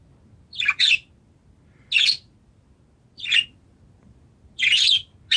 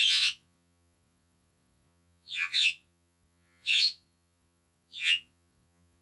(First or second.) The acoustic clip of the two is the first